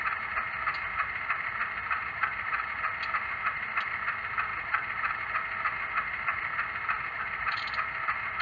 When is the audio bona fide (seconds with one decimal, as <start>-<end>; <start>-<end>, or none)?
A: 0.0-8.4